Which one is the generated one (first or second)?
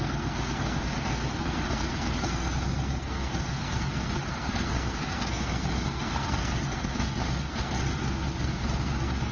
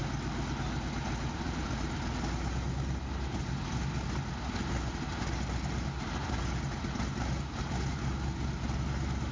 first